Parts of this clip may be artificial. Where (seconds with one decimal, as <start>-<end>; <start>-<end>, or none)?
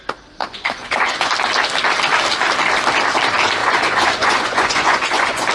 0.4-1.3; 3.6-5.5